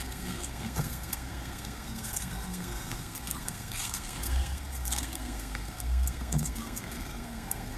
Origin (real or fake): fake